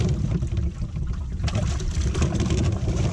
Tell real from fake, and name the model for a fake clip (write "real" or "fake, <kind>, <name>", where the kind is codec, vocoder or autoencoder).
real